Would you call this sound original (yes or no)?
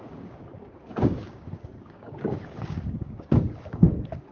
no